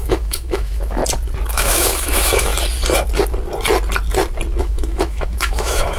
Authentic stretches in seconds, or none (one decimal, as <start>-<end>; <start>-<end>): 1.0-1.5; 2.5-4.6